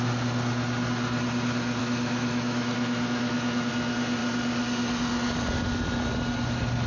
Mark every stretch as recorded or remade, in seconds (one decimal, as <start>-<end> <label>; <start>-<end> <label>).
0.0-1.8 recorded; 1.8-3.7 remade; 3.7-6.9 recorded

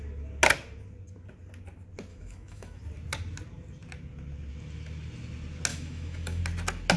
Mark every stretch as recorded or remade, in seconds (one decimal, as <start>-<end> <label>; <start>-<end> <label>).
0.0-2.1 recorded; 2.1-2.8 remade; 2.8-5.7 recorded; 5.7-6.4 remade; 6.4-7.0 recorded

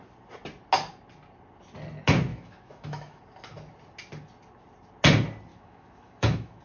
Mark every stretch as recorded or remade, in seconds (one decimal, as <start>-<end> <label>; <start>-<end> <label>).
0.0-2.3 recorded; 2.3-3.2 remade; 3.2-5.5 recorded; 5.5-6.6 remade

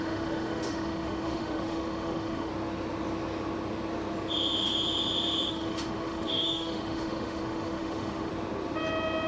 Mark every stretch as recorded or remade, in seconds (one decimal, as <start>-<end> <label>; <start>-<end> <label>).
0.0-2.5 remade; 2.5-5.5 recorded; 5.5-8.3 remade; 8.3-9.3 recorded

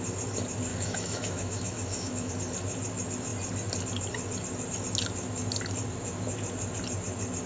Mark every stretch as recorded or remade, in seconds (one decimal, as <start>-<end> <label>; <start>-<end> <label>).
0.0-0.7 recorded; 0.7-2.3 remade; 2.3-7.5 recorded

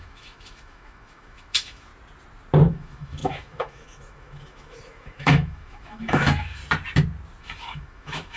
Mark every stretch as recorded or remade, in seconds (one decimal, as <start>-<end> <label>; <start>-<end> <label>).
0.0-1.9 remade; 1.9-2.7 recorded; 2.7-6.6 remade; 6.6-7.4 recorded; 7.4-8.4 remade